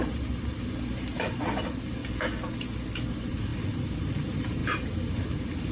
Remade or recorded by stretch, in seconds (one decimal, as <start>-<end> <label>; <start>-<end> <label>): 0.0-2.0 remade; 2.0-3.1 recorded; 3.1-5.7 remade